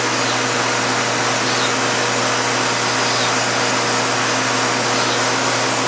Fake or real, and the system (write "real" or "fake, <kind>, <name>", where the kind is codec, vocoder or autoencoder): real